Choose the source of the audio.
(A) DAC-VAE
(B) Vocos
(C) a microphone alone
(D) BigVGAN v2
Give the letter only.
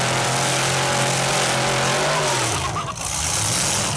C